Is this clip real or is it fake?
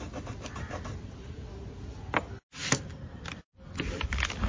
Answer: real